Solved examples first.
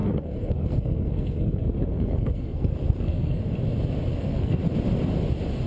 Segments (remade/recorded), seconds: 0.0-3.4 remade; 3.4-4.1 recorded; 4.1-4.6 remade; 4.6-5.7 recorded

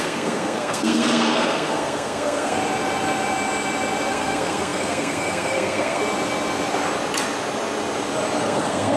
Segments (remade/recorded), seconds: 0.0-2.6 remade; 2.6-4.1 recorded; 4.1-6.0 remade; 6.0-8.4 recorded; 8.4-9.0 remade